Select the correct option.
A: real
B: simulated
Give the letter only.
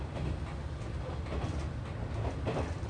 A